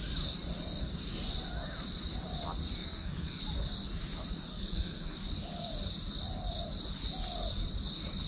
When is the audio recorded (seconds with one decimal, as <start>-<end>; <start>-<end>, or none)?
0.0-2.8; 3.4-4.5; 5.3-8.3